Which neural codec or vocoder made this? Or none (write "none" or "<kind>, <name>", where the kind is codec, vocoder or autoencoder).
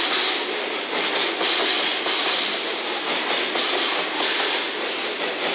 none